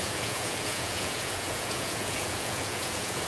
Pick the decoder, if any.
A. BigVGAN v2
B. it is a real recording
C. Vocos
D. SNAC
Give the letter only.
C